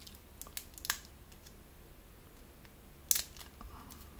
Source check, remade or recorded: recorded